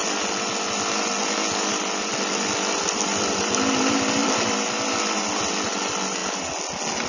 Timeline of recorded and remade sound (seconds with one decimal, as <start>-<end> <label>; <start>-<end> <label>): 0.0-1.7 recorded; 1.7-6.2 remade; 6.2-7.1 recorded